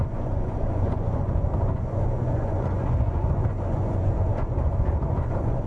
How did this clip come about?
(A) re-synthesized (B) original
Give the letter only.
A